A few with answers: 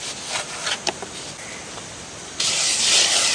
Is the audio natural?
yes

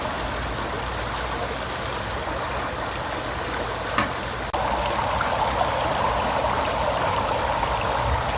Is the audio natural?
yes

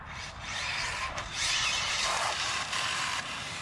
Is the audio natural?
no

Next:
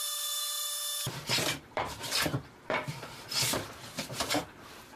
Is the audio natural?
no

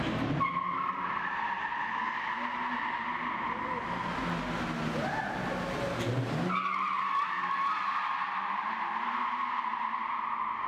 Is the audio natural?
yes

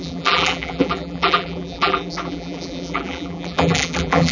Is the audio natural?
no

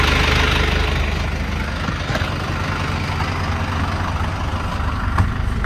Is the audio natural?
yes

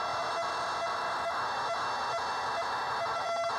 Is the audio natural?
yes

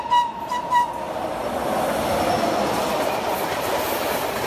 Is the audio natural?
yes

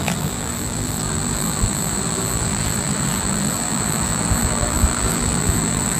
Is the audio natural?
no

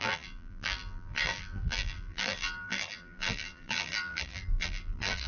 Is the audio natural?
no